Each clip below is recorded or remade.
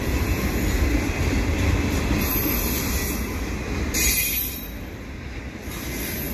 recorded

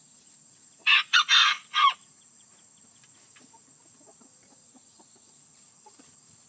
remade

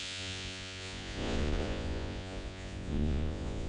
remade